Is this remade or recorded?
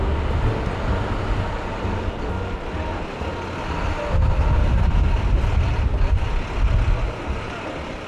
recorded